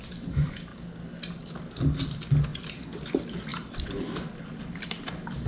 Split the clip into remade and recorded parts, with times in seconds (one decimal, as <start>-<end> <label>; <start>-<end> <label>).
0.0-5.5 recorded